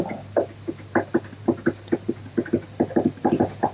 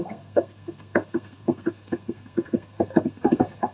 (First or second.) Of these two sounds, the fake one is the second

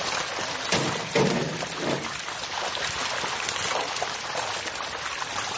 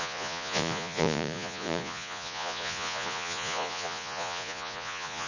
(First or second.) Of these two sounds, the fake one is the second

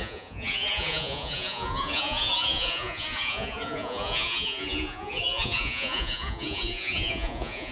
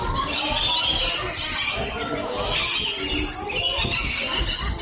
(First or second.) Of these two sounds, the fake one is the first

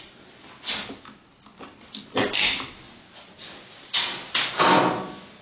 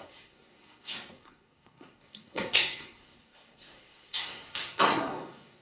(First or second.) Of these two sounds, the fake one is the second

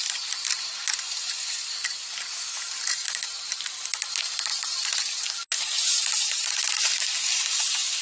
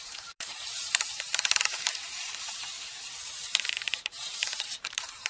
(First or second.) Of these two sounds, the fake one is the second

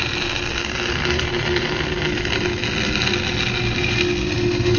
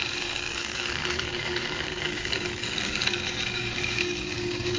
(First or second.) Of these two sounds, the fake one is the second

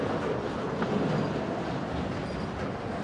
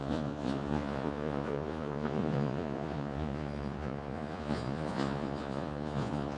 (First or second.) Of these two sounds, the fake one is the second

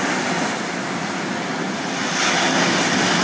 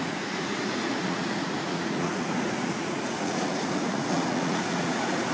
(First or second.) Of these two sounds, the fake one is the second